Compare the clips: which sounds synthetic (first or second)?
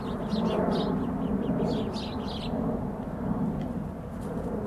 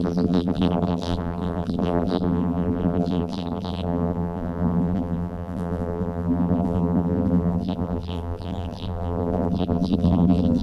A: second